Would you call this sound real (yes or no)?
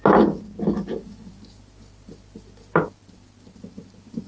yes